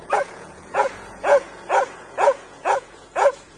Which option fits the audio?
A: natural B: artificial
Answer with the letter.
B